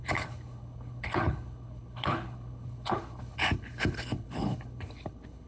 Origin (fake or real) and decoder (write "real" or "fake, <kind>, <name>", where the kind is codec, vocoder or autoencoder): fake, codec, HILCodec